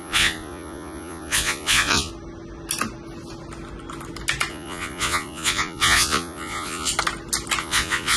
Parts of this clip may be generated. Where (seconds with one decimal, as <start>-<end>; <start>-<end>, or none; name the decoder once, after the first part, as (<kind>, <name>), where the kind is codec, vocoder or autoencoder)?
0.0-2.1 (vocoder, Vocos); 4.5-6.9; 7.6-8.2